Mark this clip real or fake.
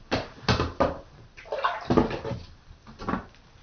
real